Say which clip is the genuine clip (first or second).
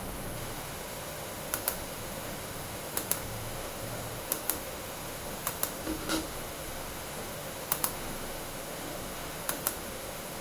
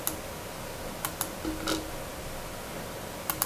second